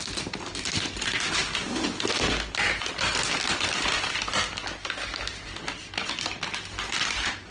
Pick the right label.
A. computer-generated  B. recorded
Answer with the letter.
B